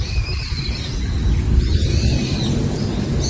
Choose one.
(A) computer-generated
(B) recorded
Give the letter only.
B